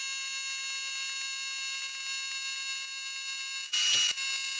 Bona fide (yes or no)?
yes